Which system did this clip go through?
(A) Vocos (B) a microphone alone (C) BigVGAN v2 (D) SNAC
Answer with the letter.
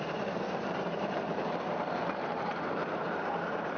C